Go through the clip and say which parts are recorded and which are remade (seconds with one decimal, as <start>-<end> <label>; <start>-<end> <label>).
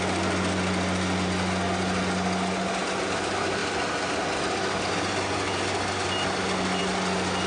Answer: 0.0-7.5 recorded